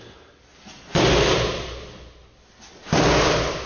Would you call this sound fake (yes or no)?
no